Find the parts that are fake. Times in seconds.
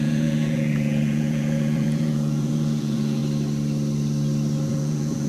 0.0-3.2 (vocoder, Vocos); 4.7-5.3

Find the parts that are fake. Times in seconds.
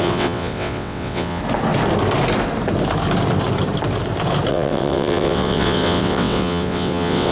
0.0-1.4 (vocoder, WaveNeXt); 4.5-7.3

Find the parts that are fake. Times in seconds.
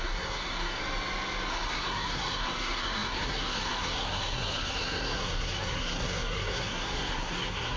0.0-0.8 (codec, SNAC); 1.5-7.8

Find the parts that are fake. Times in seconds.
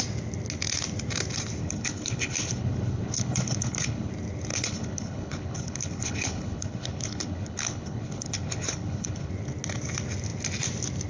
1.6-4.1 (codec, HILCodec); 4.5-9.3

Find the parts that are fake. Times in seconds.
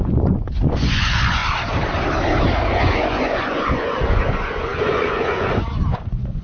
0.0-1.4 (vocoder, Vocos); 2.7-6.4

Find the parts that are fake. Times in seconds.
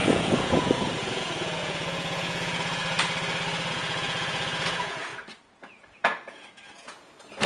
0.0-2.8 (vocoder, Vocos); 3.7-5.1; 5.6-7.5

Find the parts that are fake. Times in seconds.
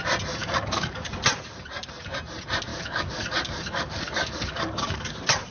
0.4-1.1 (codec, DAC); 2.7-5.1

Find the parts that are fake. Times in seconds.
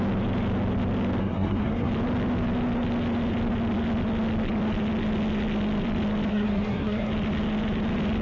1.2-1.9 (codec, SNAC); 6.3-7.1